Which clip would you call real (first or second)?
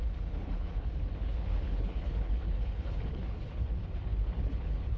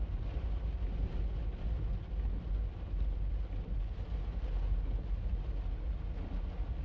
second